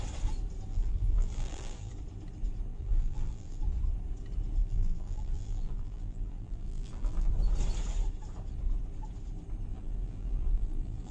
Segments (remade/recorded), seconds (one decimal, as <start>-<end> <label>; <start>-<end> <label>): 0.0-0.7 recorded; 0.7-1.9 remade; 1.9-2.7 recorded; 2.7-3.6 remade; 3.6-4.6 recorded; 4.6-7.3 remade; 7.3-9.7 recorded; 9.7-11.1 remade